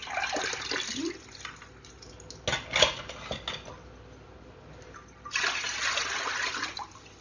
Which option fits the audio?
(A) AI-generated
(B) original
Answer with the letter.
B